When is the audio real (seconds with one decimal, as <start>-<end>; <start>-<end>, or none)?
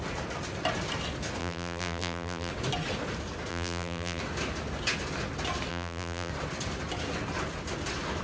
0.0-1.4; 2.5-3.5; 4.2-5.7; 6.3-8.2